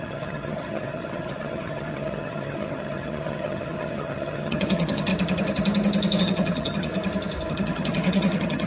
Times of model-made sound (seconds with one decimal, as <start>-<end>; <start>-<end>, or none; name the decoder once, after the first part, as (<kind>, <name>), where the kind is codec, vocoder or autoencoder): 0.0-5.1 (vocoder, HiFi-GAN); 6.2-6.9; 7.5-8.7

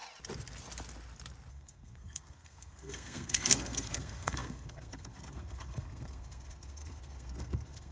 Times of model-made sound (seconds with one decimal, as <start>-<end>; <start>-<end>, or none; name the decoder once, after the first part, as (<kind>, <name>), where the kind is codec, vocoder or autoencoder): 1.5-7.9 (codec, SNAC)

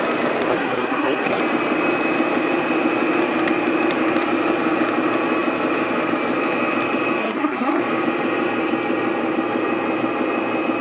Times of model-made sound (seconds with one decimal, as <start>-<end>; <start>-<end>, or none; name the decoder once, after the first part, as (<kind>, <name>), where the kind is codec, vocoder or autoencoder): 0.5-1.4 (codec, SNAC); 7.2-7.8

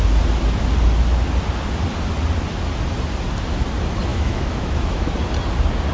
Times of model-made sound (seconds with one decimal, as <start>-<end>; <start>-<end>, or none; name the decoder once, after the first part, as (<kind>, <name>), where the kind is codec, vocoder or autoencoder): 4.1-5.1 (autoencoder, DAC-VAE)